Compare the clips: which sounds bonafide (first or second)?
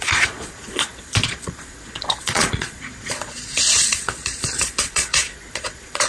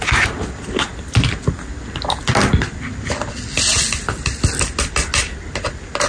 second